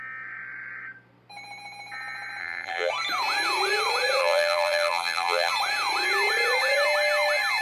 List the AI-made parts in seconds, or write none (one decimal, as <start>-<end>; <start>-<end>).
2.4-2.9; 4.2-5.5